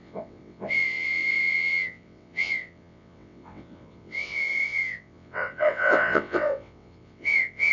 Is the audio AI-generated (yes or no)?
yes